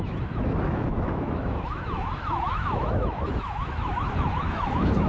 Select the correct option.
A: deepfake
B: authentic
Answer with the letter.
A